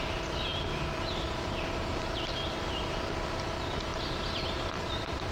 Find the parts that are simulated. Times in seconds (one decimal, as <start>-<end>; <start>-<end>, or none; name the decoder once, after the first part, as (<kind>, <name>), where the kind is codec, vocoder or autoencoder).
3.9-5.3 (vocoder, BigVGAN v2)